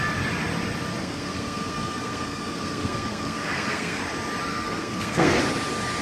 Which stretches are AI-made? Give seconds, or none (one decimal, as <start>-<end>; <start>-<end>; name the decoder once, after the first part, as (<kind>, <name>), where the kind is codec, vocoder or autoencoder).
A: 1.0-4.0 (codec, SNAC); 4.5-5.4